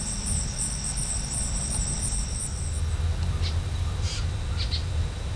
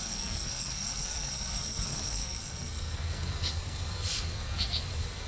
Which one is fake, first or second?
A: second